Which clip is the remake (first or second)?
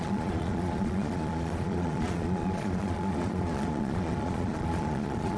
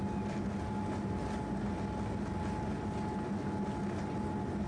first